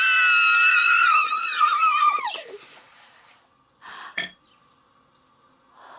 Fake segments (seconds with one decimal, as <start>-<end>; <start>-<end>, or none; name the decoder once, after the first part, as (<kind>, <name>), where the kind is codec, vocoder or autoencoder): 0.7-3.3 (vocoder, Vocos)